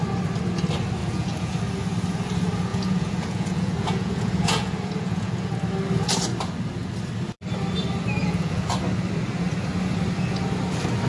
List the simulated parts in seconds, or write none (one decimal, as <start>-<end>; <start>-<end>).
1.0-1.6; 2.7-5.5; 8.2-8.7

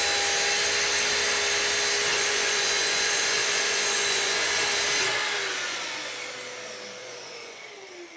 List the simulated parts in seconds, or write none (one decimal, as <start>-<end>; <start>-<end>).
2.1-4.6; 5.5-6.1; 7.0-7.6

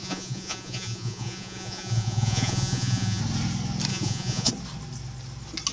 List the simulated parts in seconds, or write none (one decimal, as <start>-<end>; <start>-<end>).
0.0-3.2; 3.9-4.5

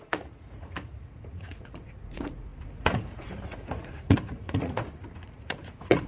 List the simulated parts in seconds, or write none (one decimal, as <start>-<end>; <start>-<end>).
0.0-6.1